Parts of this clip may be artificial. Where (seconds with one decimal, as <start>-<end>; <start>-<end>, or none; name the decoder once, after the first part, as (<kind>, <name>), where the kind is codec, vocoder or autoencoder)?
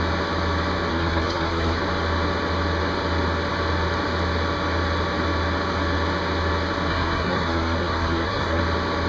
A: 0.9-1.8 (codec, SNAC); 6.9-8.6